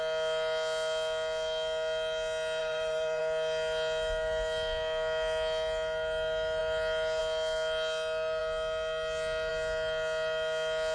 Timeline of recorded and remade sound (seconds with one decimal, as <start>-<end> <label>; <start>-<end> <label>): 0.0-2.6 recorded; 2.6-3.2 remade; 3.2-10.9 recorded

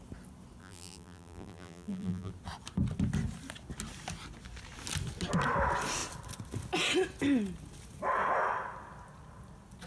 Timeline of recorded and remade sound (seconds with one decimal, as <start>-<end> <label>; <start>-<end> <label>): 0.0-0.6 recorded; 0.6-2.3 remade; 2.3-9.9 recorded

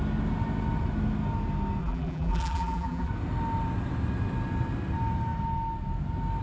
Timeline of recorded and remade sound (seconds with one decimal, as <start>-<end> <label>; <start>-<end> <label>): 0.0-1.8 recorded; 1.8-3.1 remade; 3.1-6.4 recorded

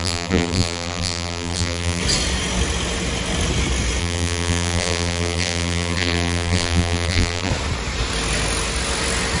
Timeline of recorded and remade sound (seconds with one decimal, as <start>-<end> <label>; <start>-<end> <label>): 0.0-2.0 remade; 2.0-4.0 recorded; 4.0-7.5 remade; 7.5-9.4 recorded

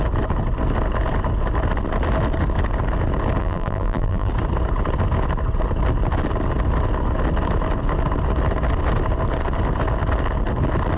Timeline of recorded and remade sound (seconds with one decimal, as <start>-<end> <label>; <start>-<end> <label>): 0.0-3.4 recorded; 3.4-4.3 remade; 4.3-11.0 recorded

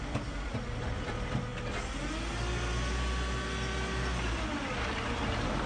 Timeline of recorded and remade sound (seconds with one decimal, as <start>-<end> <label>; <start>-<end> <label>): 0.0-1.5 remade; 1.5-4.9 recorded; 4.9-5.7 remade

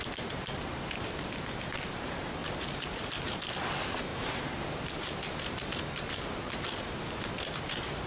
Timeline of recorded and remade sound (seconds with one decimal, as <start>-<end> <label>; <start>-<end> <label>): 0.0-2.4 recorded; 2.4-3.5 remade; 3.5-4.1 recorded; 4.1-8.1 remade

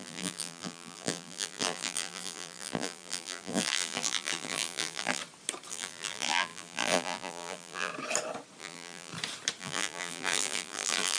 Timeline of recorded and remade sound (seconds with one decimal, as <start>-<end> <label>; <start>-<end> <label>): 0.0-5.2 remade; 5.2-5.7 recorded; 5.7-7.9 remade; 7.9-8.6 recorded; 8.6-9.1 remade; 9.1-9.6 recorded; 9.6-11.2 remade